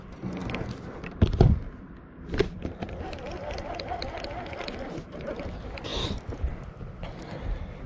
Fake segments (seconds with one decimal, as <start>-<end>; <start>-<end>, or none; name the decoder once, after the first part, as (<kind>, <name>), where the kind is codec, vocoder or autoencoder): none

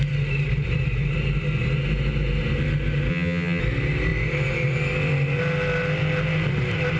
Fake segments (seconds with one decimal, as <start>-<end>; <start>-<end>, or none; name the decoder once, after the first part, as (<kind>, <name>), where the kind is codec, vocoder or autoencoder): 3.1-3.6 (vocoder, HiFi-GAN)

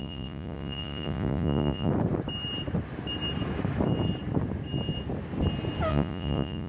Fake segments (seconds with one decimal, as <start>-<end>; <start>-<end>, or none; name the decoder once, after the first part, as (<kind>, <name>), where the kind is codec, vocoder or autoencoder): 0.0-1.9 (vocoder, Vocos); 5.9-6.7

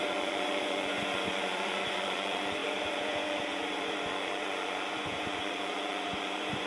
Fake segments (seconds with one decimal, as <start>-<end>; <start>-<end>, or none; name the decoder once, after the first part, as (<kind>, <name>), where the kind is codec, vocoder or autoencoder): 0.0-6.7 (vocoder, Vocos)

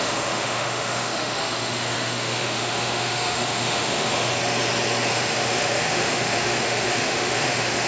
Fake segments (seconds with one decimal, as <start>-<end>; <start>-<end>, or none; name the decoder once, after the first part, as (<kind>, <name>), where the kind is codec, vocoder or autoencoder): 0.0-4.3 (autoencoder, DAC-VAE); 5.1-7.9

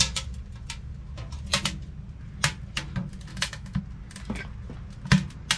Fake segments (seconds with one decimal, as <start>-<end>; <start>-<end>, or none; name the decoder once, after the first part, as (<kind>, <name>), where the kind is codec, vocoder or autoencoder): 3.3-3.8 (autoencoder, DAC-VAE)

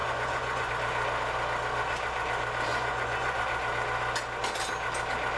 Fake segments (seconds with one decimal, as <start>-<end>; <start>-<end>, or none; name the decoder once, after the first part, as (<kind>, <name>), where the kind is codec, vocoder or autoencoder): 0.0-0.7 (vocoder, Vocos); 2.7-3.4